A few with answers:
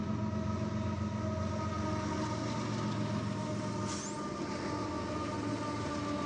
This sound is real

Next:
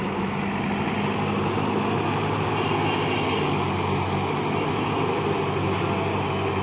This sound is real